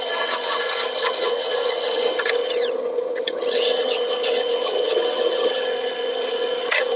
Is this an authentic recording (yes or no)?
no